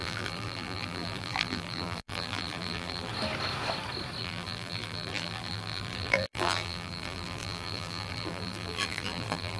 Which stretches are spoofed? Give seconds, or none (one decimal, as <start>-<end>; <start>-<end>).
0.0-3.1; 4.2-9.6